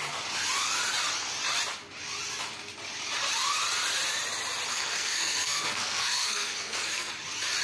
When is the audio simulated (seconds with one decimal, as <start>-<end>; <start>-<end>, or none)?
4.7-7.1